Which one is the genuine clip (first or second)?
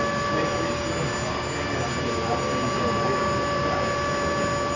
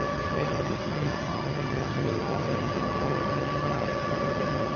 first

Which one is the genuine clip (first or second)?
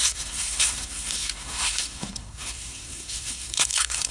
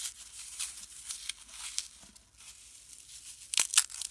second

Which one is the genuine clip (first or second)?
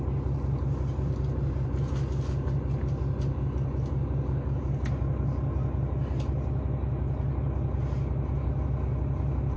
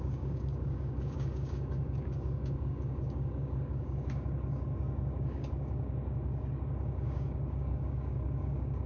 first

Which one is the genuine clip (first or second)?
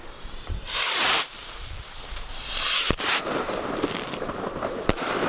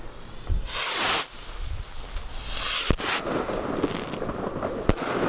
second